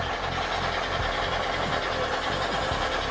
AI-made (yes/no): no